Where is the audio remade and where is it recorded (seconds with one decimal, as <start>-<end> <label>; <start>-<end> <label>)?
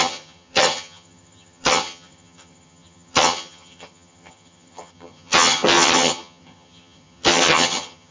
0.0-8.1 remade